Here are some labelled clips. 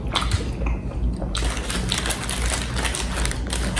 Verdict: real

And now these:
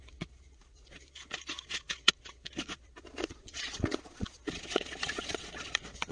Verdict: fake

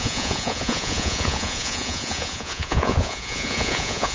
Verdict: fake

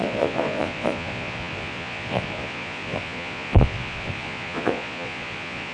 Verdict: fake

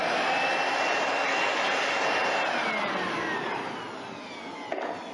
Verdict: real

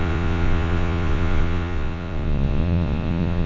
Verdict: fake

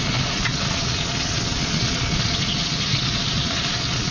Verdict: fake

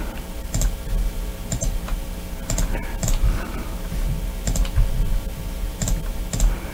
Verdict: real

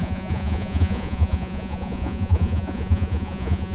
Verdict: fake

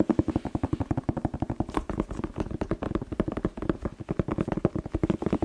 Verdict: real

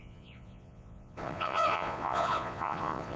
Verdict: fake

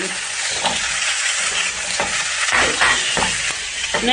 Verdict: fake